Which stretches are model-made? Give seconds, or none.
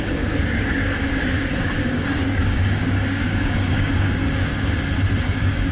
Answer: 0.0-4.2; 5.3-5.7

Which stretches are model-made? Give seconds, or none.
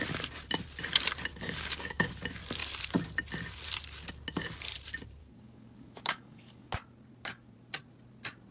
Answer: 1.3-2.1; 5.2-6.7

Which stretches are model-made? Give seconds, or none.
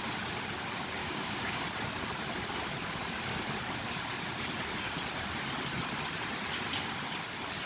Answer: 1.0-1.6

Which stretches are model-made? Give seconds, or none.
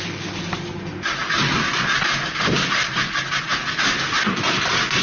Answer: none